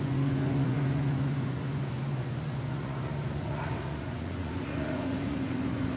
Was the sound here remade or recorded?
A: remade